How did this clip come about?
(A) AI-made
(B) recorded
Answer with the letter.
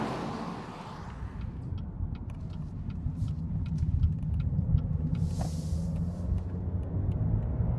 B